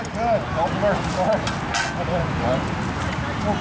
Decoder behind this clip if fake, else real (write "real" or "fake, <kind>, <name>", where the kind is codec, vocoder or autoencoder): real